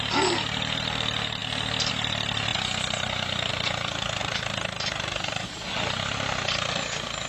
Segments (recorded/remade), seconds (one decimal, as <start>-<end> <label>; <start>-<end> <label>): 0.0-4.2 recorded; 4.2-5.7 remade; 5.7-7.3 recorded